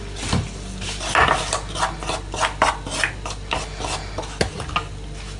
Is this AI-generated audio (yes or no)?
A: no